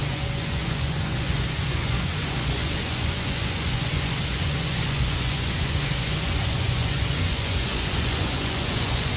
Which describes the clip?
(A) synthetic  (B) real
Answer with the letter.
A